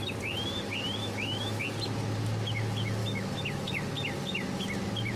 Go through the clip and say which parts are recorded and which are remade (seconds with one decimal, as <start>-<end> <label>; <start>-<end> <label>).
0.0-1.0 recorded; 1.0-1.6 remade; 1.6-3.0 recorded; 3.0-3.7 remade; 3.7-5.2 recorded